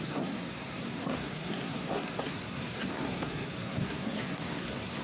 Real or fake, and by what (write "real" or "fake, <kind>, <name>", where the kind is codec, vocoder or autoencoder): fake, codec, SNAC